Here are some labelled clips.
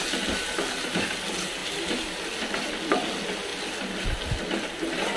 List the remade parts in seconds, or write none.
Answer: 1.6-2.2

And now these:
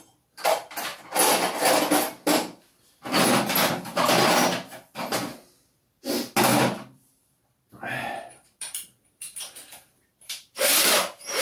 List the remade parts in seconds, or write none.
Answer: 6.5-11.4